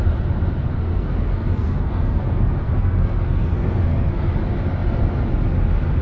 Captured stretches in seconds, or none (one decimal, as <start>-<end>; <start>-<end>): 0.0-0.7; 4.3-6.0